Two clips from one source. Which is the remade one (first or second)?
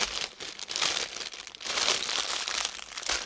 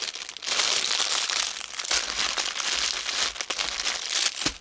first